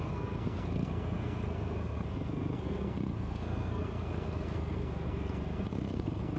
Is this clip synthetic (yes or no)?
yes